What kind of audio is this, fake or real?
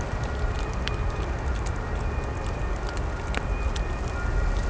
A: real